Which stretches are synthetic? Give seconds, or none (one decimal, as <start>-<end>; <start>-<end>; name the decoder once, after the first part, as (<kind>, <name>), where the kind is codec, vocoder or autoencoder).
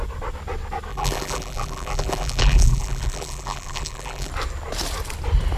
0.9-4.3 (vocoder, BigVGAN v2)